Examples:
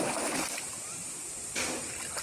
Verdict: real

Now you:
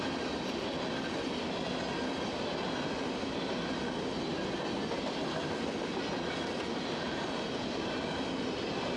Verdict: real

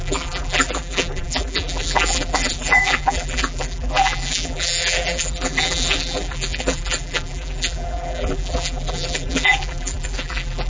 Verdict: fake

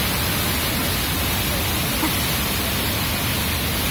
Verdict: real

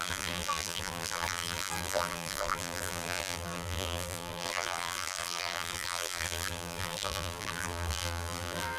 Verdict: fake